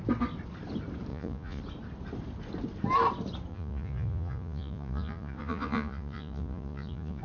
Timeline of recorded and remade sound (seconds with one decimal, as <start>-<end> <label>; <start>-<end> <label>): 0.0-1.1 recorded; 1.1-1.6 remade; 1.6-3.5 recorded; 3.5-7.2 remade